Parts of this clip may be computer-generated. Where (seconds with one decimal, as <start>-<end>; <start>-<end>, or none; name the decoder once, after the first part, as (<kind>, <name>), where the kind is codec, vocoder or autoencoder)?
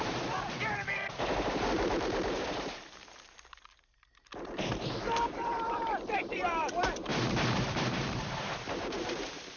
0.0-9.6 (vocoder, BigVGAN v2)